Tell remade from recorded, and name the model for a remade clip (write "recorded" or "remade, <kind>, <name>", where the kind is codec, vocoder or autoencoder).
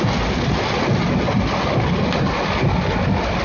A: recorded